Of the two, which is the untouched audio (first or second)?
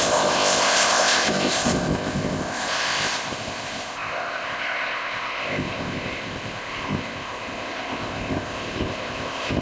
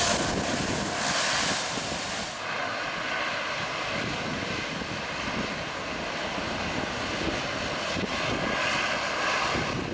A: second